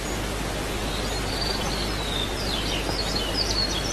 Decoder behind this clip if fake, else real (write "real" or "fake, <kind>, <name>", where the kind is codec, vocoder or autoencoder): real